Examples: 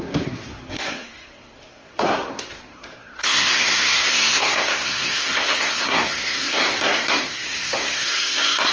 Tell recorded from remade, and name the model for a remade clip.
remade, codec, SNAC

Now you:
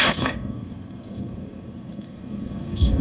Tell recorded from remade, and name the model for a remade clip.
remade, codec, SNAC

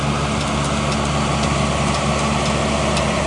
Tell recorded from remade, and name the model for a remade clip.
recorded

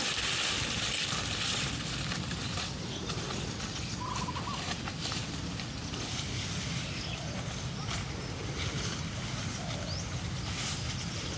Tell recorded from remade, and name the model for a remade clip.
recorded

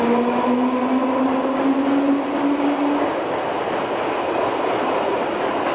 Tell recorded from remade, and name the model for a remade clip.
recorded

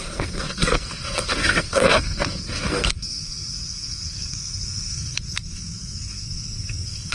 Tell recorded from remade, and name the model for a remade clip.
remade, codec, SNAC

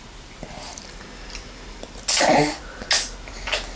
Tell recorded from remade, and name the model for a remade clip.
recorded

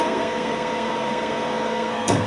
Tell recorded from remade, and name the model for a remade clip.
remade, codec, SNAC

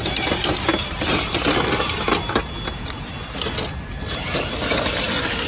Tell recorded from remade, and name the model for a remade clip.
recorded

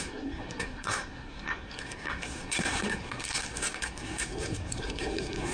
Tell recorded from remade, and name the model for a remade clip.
remade, codec, SNAC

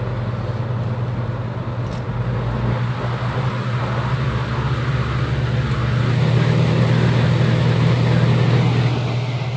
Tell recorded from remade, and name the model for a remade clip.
recorded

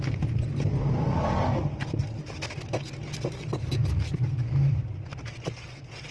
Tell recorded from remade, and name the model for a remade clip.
recorded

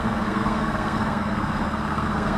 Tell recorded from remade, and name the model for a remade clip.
remade, codec, SNAC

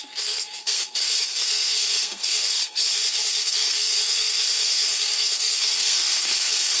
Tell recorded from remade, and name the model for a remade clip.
remade, codec, SNAC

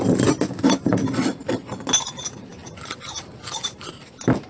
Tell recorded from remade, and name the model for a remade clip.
recorded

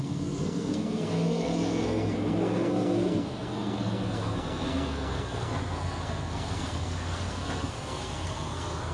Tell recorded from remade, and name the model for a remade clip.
remade, codec, SNAC